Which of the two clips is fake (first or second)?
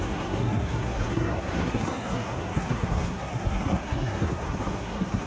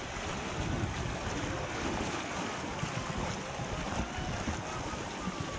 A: first